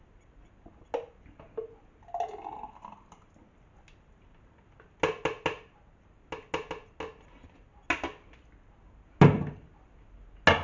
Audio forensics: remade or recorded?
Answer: recorded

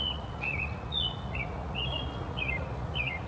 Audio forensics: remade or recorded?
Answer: remade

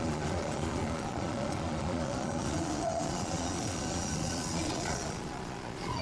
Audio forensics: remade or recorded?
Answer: remade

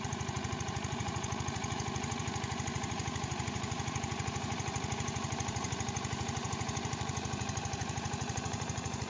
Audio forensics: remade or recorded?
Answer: remade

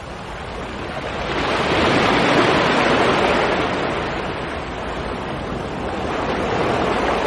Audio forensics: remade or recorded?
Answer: recorded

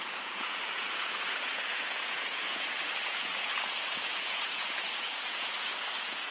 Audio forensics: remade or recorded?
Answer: remade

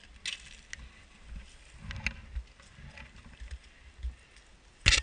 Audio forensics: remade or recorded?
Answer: recorded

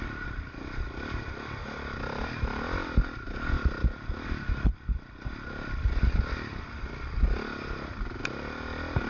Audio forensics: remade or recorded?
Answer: recorded